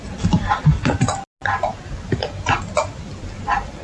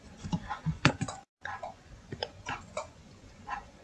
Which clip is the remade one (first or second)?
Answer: second